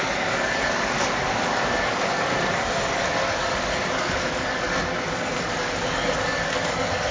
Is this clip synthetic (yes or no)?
yes